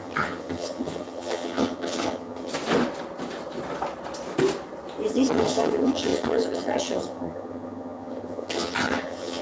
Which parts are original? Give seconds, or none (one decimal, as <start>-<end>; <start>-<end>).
2.5-5.1